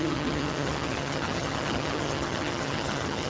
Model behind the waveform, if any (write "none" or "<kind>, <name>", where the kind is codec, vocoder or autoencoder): vocoder, HiFi-GAN